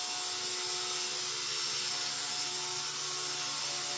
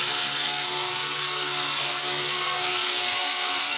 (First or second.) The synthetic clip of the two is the second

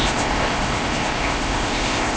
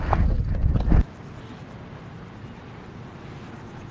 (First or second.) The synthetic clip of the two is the first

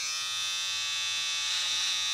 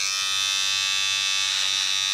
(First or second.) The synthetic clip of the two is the first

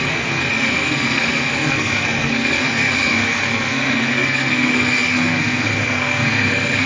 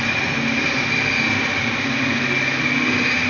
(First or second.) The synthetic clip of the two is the first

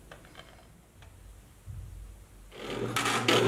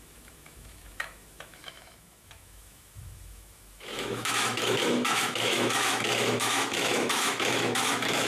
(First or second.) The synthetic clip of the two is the second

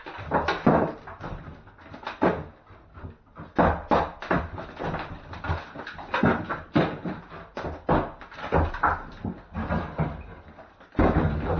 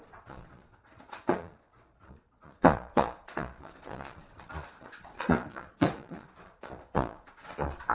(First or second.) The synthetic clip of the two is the second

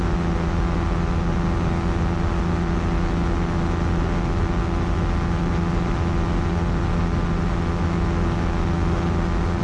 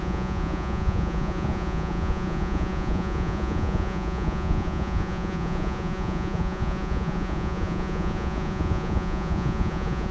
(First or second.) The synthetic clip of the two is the second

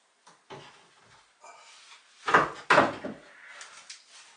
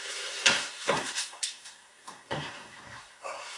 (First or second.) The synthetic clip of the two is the second